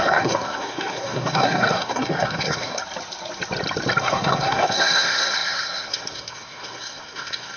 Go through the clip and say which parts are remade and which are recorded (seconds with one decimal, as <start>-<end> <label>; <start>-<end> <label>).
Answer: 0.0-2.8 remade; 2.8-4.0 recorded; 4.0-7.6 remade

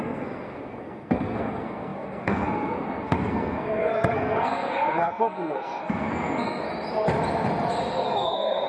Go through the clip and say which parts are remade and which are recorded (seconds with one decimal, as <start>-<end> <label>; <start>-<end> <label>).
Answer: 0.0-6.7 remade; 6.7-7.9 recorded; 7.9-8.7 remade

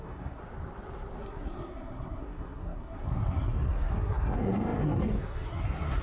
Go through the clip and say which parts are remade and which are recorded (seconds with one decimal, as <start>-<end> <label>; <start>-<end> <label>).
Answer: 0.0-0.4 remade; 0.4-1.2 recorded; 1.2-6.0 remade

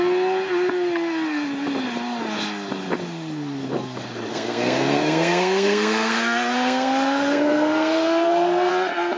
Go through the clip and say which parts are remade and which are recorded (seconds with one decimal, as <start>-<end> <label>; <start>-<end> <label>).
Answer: 0.0-4.3 recorded; 4.3-8.7 remade; 8.7-9.2 recorded

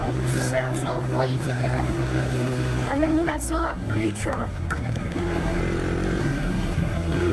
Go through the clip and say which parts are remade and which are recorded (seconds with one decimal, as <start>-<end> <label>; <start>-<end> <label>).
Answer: 0.0-5.6 remade; 5.6-6.2 recorded; 6.2-7.3 remade